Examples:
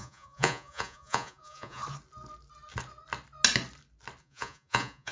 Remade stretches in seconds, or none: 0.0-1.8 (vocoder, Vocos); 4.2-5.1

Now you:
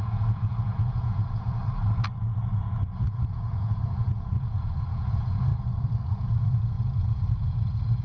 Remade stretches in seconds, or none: 0.0-1.6 (vocoder, Vocos); 2.4-5.5; 6.1-8.0

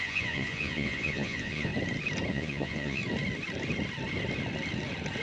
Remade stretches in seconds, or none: 0.0-1.7 (vocoder, Vocos); 2.3-3.0

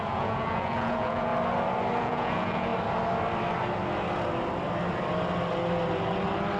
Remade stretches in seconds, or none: 0.0-1.3 (vocoder, Vocos); 2.0-2.7

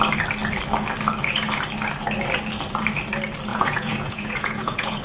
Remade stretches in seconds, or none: 3.5-5.0 (vocoder, Vocos)

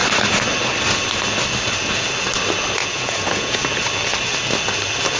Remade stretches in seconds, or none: 2.8-3.6 (vocoder, Vocos)

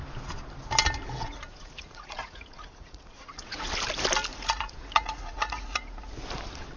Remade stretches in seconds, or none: 1.2-3.7 (vocoder, Vocos); 4.3-6.0